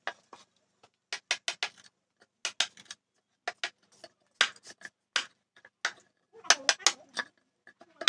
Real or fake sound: real